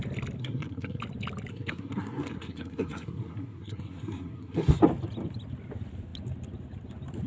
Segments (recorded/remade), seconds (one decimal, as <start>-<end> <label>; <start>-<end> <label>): 0.0-0.4 recorded; 0.4-1.0 remade; 1.0-1.5 recorded; 1.5-4.8 remade; 4.8-7.3 recorded